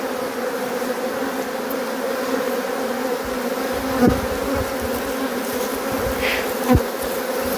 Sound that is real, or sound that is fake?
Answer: real